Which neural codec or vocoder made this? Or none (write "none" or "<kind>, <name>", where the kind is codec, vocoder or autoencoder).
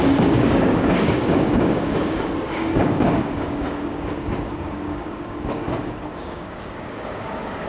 codec, DAC